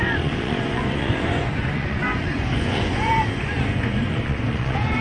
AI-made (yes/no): yes